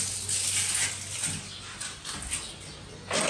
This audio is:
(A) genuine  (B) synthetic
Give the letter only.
A